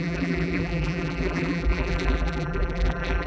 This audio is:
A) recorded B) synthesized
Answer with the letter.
B